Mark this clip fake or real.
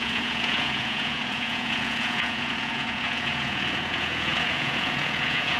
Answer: fake